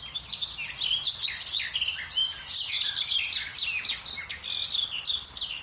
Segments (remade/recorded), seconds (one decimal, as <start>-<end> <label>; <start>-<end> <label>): 0.0-5.6 recorded